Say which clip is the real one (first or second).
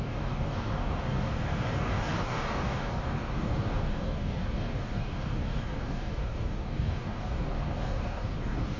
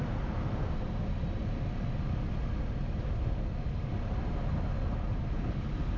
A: second